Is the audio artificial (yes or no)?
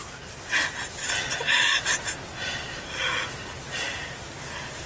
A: no